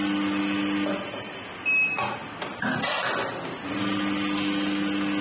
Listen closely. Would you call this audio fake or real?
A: real